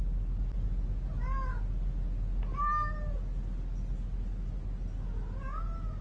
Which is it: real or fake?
real